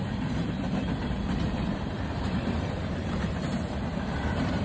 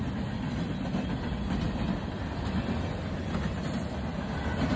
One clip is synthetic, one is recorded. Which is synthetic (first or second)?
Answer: first